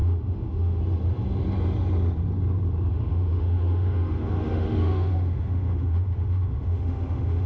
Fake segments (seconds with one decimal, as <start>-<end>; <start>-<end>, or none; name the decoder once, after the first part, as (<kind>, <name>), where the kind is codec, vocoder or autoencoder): 0.0-0.8 (autoencoder, DAC-VAE); 2.9-7.5